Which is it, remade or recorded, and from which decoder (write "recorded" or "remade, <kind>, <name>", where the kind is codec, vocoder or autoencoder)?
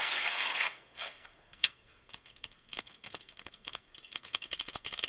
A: remade, codec, SNAC